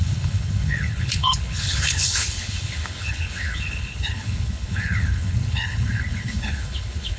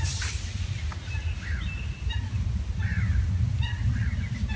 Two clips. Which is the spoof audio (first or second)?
first